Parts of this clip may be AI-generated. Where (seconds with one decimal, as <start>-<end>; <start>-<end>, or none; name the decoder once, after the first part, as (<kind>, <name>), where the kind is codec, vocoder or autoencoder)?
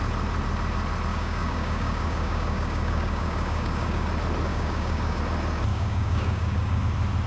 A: 1.1-4.1 (codec, DAC); 4.5-5.2; 5.7-6.8